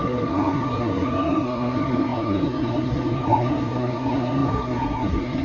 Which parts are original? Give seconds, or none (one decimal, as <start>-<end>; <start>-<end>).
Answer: none